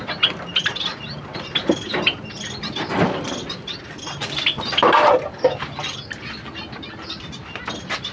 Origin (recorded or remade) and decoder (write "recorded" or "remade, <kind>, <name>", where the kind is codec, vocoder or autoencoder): recorded